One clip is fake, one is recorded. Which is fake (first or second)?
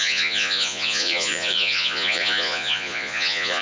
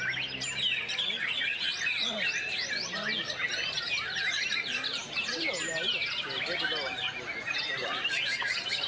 first